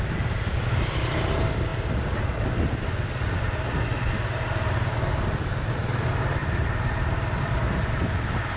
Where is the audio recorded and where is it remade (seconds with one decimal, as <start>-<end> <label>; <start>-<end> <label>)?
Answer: 0.0-6.4 recorded; 6.4-7.5 remade; 7.5-8.6 recorded